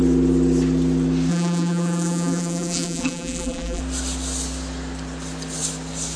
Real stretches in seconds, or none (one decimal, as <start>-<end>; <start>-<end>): 0.0-1.3; 3.8-6.2